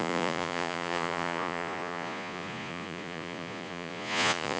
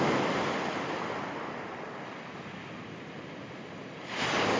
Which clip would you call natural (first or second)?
second